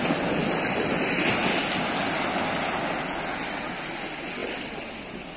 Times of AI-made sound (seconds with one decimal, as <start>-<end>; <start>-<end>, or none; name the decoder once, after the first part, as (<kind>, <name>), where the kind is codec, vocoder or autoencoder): 1.4-2.0 (vocoder, BigVGAN v2); 4.4-5.4